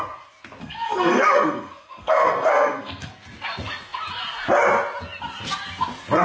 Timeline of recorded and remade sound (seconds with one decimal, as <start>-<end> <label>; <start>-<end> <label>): 0.0-0.6 recorded; 0.6-3.1 remade; 3.1-6.2 recorded